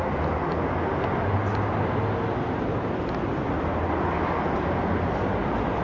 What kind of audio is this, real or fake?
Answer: real